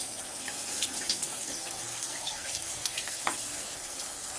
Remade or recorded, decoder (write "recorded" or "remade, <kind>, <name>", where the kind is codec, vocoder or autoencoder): remade, codec, SNAC